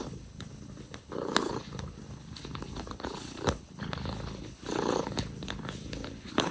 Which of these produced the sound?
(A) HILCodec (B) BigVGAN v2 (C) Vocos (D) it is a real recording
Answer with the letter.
A